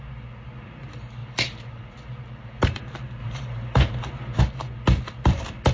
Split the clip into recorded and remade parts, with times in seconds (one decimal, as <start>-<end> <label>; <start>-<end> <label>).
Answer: 0.0-1.2 recorded; 1.2-2.8 remade; 2.8-3.2 recorded; 3.2-4.4 remade; 4.4-5.7 recorded